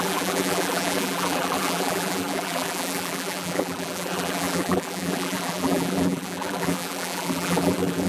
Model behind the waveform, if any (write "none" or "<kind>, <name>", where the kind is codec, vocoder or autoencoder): vocoder, BigVGAN v2